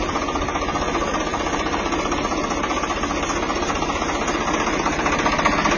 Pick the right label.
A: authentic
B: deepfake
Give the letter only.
A